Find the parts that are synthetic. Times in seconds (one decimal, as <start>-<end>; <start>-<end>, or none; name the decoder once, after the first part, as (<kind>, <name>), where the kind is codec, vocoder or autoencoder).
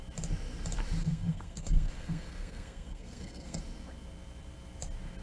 1.0-3.6 (codec, SNAC)